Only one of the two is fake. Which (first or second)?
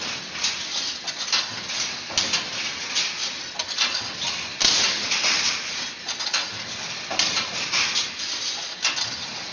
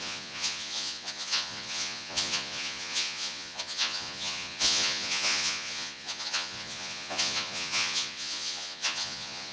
second